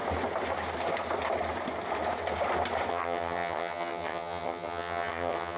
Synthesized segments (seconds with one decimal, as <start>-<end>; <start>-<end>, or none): 2.9-5.6